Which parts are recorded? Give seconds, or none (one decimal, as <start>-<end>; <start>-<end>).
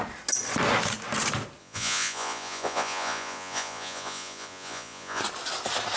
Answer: 0.0-1.6; 5.2-6.0